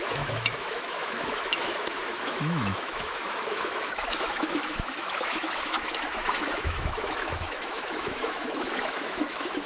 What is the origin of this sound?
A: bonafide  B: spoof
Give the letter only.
B